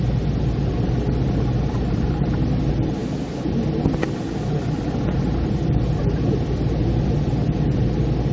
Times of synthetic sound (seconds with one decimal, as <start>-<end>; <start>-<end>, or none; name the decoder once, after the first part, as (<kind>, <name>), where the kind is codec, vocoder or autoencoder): none